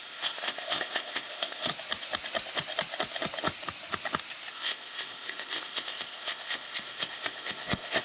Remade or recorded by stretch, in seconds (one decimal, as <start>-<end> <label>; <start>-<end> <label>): 0.0-1.7 remade; 1.7-4.5 recorded; 4.5-8.0 remade